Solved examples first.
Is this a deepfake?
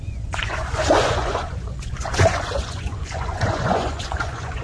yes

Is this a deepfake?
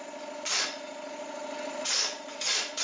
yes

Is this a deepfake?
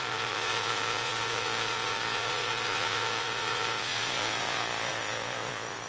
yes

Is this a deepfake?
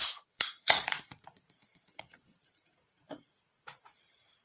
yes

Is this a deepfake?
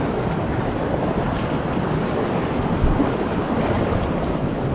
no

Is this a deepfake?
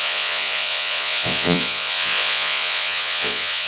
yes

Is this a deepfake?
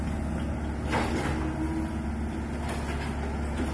no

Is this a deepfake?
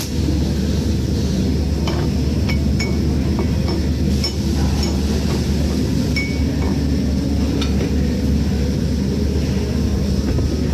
no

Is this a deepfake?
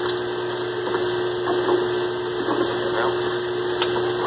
no